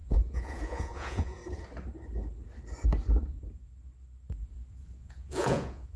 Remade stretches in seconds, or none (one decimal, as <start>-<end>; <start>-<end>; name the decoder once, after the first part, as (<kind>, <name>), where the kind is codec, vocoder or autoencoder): 0.0-1.4 (vocoder, Vocos); 5.0-6.0